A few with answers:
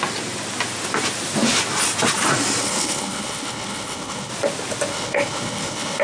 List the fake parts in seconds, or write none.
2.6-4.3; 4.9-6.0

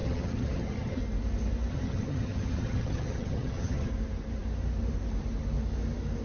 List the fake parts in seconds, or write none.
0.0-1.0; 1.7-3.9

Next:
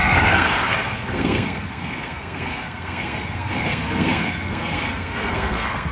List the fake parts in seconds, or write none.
0.0-5.9

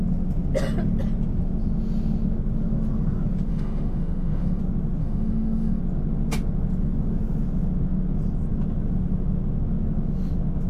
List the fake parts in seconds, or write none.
3.5-4.6; 5.0-5.8